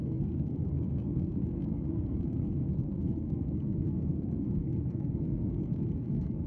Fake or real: fake